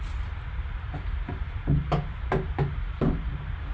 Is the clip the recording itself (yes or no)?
yes